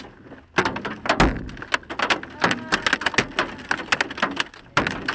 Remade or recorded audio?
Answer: recorded